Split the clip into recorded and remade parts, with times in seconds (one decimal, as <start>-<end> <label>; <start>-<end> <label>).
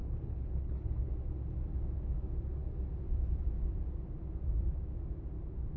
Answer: 0.0-1.1 remade; 1.1-5.8 recorded